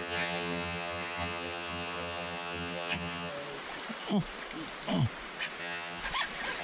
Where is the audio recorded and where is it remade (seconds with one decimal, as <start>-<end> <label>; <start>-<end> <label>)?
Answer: 0.0-3.3 remade; 3.3-5.6 recorded; 5.6-6.0 remade; 6.0-6.6 recorded